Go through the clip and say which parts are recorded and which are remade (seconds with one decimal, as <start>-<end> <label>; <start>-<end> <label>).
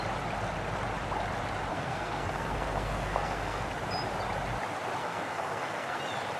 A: 0.0-1.7 recorded; 1.7-3.7 remade; 3.7-5.0 recorded; 5.0-6.0 remade; 6.0-6.4 recorded